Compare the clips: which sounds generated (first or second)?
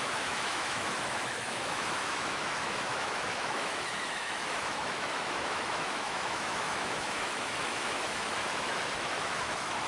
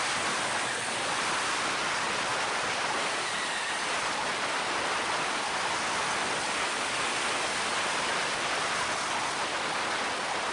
first